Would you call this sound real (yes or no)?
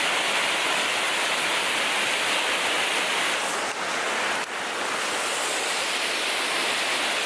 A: yes